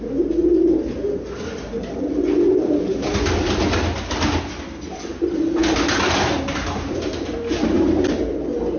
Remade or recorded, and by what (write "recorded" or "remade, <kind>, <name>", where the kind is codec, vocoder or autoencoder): recorded